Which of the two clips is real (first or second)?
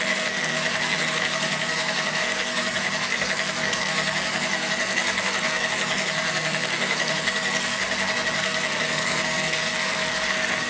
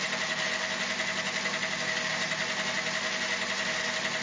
second